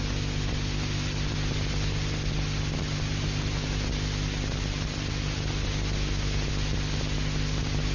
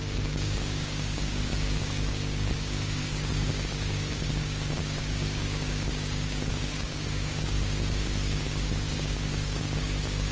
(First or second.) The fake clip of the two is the second